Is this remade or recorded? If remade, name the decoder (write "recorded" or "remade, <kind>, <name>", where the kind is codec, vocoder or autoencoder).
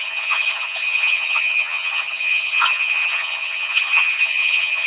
remade, vocoder, HiFi-GAN